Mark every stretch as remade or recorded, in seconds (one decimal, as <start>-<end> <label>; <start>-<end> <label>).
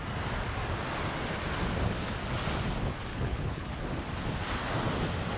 0.0-3.1 recorded; 3.1-3.8 remade; 3.8-5.4 recorded